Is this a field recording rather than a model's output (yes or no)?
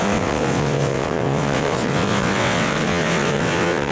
no